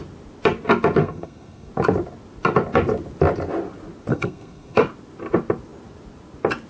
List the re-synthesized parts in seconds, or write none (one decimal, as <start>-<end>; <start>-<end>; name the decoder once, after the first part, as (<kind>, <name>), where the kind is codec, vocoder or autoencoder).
1.0-1.7 (codec, SNAC); 4.1-4.8